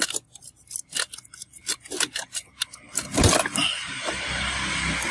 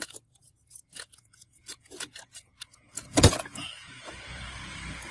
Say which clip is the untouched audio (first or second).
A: first